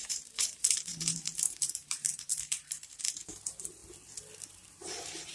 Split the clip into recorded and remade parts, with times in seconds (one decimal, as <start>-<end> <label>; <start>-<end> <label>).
0.0-3.8 remade; 3.8-4.4 recorded; 4.4-5.3 remade